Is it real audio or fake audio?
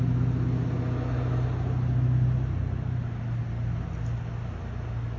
real